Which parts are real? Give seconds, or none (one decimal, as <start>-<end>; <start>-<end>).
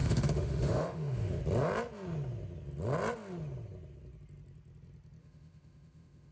1.4-5.2